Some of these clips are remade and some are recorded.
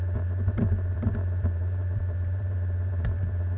remade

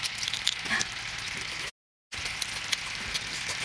recorded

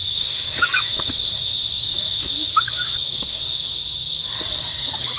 remade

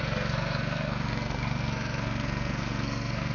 remade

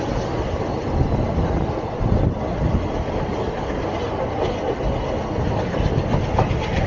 recorded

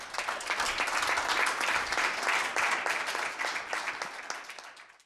recorded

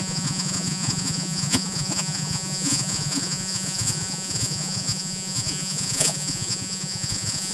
remade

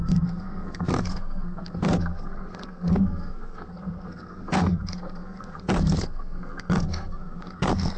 remade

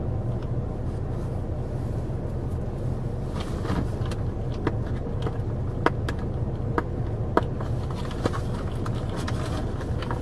recorded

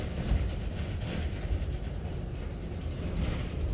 recorded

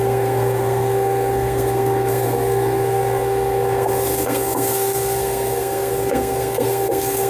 remade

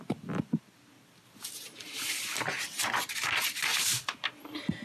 recorded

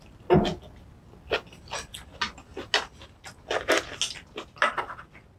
recorded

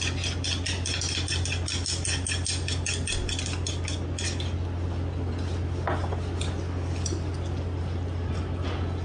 recorded